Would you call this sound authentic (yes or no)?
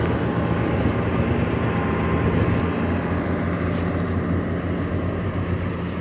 yes